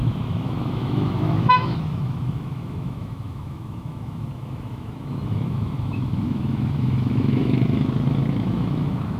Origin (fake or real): fake